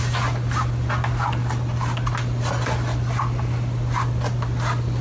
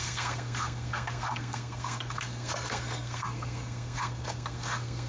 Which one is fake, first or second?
second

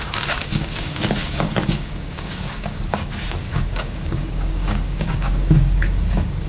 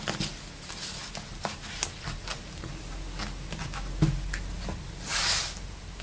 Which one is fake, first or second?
first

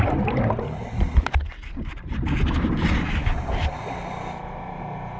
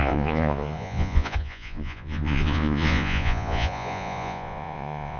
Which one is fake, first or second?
second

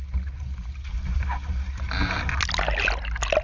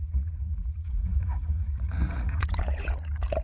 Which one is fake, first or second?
second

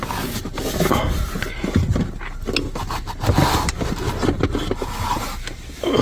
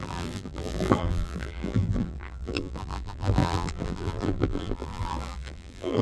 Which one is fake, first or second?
second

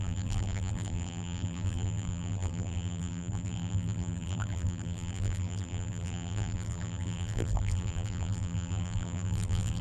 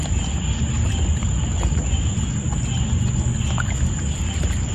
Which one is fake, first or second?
first